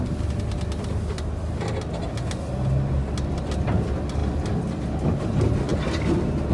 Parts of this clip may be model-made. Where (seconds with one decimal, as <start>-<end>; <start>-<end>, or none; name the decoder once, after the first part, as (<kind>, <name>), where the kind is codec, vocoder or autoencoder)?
none